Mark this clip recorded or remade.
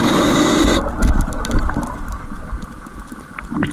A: recorded